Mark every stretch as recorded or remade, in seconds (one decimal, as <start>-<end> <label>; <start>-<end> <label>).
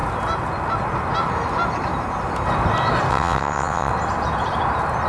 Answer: 0.0-3.1 recorded; 3.1-3.9 remade; 3.9-5.1 recorded